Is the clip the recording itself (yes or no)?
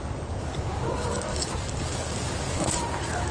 no